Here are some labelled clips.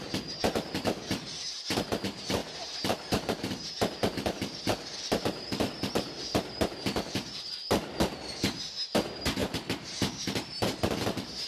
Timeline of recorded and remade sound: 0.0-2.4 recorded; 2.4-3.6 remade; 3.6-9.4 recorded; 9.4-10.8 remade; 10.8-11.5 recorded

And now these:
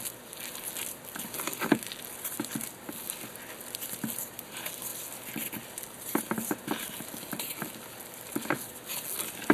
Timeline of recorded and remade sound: 0.0-9.5 recorded

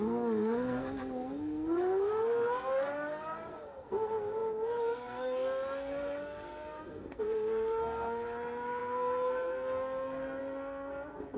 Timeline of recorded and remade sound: 0.0-11.4 remade

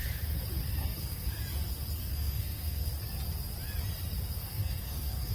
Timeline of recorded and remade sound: 0.0-1.0 recorded; 1.0-1.4 remade; 1.4-2.0 recorded; 2.0-2.9 remade; 2.9-4.4 recorded; 4.4-5.3 remade

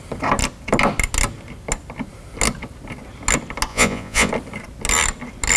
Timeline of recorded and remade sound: 0.0-3.7 recorded; 3.7-4.3 remade; 4.3-5.6 recorded

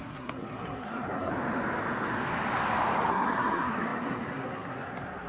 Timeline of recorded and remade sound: 0.0-1.3 remade; 1.3-3.1 recorded; 3.1-5.3 remade

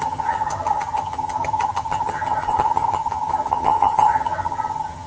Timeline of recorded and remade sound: 0.0-5.1 remade